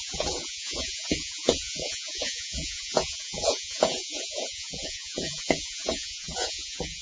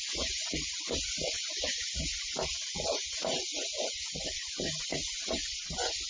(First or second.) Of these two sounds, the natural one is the second